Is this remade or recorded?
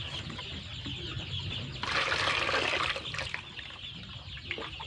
recorded